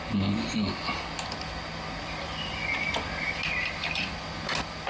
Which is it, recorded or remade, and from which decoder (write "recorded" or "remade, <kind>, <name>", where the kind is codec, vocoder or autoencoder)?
recorded